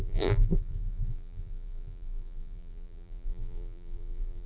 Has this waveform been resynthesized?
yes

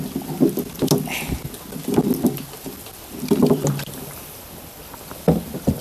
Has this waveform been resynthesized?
no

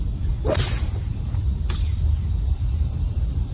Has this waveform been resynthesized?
yes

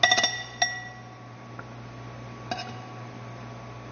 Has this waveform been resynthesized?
no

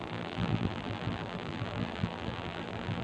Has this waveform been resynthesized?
yes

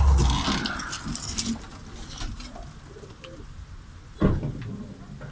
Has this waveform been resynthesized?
no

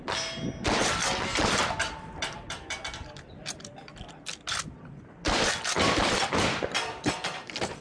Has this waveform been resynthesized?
no